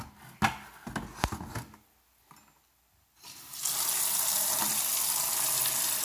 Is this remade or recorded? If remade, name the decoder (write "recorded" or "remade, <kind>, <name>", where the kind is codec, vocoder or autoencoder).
recorded